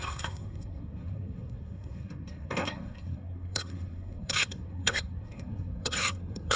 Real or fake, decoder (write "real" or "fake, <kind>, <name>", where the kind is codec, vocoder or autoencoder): fake, codec, SNAC